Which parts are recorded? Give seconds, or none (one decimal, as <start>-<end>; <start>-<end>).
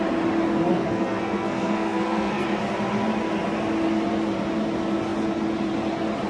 0.0-0.7; 2.6-6.3